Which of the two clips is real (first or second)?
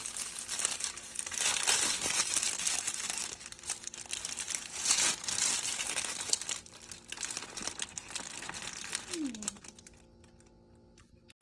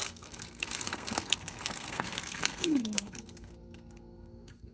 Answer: first